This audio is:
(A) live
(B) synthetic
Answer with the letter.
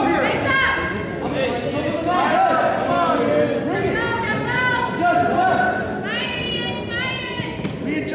A